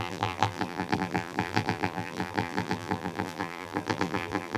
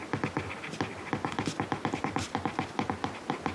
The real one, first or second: second